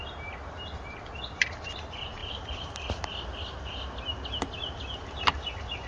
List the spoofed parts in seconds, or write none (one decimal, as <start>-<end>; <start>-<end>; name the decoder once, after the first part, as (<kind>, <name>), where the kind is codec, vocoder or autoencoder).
none